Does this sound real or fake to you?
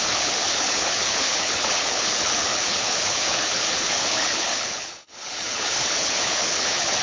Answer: fake